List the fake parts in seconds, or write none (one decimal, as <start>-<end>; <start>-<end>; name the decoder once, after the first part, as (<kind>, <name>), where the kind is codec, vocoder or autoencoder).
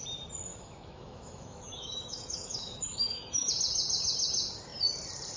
0.5-3.5 (autoencoder, DAC-VAE)